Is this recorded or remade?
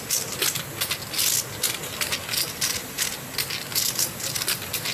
recorded